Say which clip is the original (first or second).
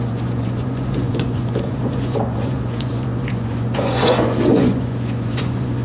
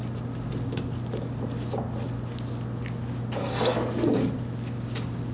second